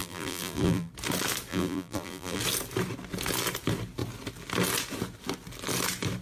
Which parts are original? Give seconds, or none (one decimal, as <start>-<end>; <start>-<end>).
0.9-1.5; 2.4-6.2